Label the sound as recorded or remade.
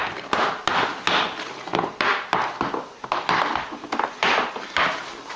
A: recorded